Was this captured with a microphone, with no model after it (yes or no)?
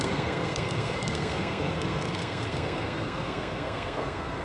no